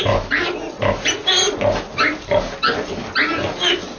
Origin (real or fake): real